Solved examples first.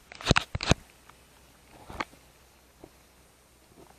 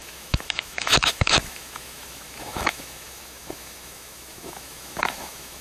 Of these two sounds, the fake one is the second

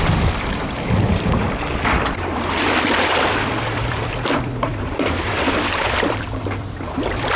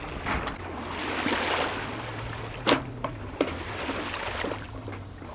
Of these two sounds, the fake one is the first